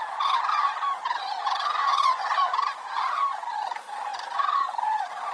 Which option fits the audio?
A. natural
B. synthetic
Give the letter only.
B